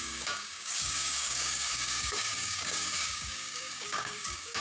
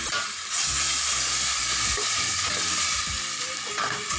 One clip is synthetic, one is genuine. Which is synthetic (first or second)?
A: first